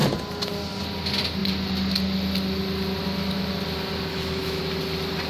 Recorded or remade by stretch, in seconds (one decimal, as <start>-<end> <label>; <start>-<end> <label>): 0.0-4.1 recorded; 4.1-4.6 remade; 4.6-5.3 recorded

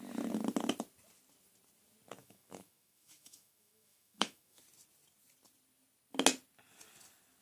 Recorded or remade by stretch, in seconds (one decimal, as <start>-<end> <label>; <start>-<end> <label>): 0.0-2.2 recorded; 2.2-4.6 remade; 4.6-7.4 recorded